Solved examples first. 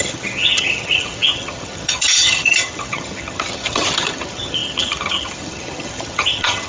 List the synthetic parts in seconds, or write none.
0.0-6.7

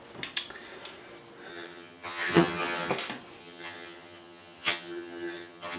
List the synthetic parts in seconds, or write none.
1.5-2.9; 3.4-5.8

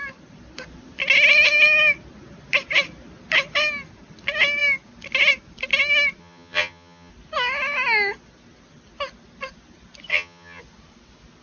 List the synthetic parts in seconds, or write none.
6.2-7.1; 10.1-10.6

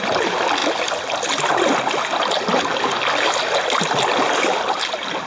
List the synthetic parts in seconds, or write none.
none

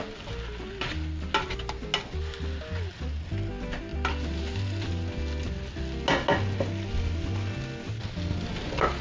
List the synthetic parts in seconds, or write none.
none

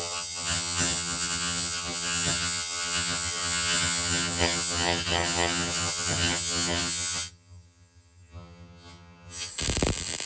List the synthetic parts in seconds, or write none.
0.0-9.5

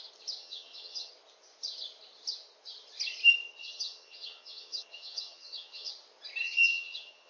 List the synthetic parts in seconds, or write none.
0.4-1.1; 3.6-5.9; 6.4-7.3